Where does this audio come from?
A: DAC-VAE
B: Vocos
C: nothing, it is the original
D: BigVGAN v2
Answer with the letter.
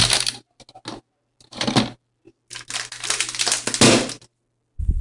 C